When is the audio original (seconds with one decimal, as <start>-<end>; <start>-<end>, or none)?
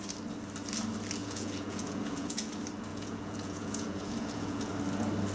0.0-1.2; 2.5-2.9; 4.7-5.3